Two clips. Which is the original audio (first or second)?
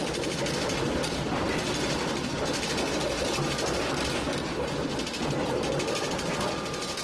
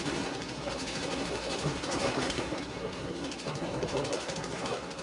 first